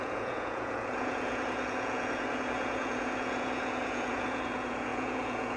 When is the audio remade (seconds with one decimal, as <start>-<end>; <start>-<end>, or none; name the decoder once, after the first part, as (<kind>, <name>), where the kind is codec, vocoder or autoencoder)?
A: 0.0-5.6 (vocoder, Vocos)